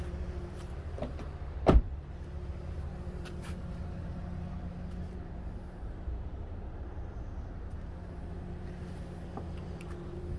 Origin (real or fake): fake